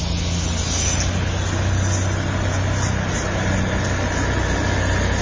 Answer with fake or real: real